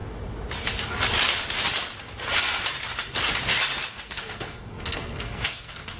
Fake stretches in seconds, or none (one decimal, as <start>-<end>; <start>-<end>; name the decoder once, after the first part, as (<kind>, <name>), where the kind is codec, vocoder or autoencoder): 3.9-6.0 (codec, SNAC)